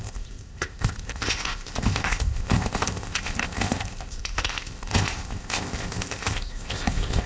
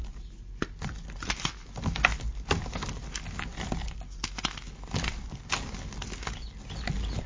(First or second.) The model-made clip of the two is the first